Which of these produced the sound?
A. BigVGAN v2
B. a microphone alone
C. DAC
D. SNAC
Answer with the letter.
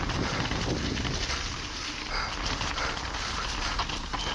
B